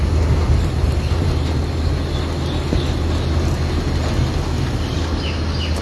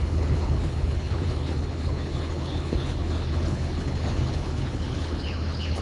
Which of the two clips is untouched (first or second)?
first